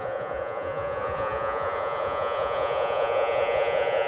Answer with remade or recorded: remade